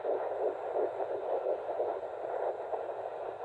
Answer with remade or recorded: recorded